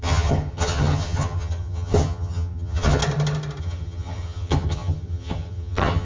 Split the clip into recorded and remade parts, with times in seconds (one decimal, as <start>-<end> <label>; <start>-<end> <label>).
0.0-3.0 remade; 3.0-3.6 recorded; 3.6-6.0 remade